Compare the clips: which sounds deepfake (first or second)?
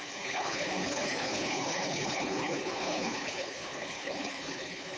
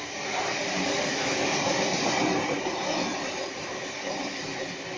first